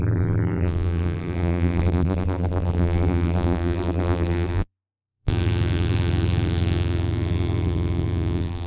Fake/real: fake